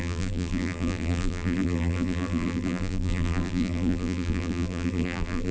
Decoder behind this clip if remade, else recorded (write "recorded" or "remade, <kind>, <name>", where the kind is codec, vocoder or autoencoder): remade, vocoder, BigVGAN v2